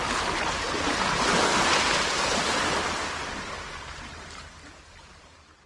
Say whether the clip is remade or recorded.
recorded